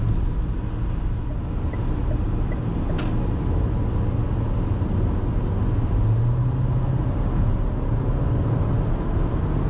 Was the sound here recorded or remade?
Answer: recorded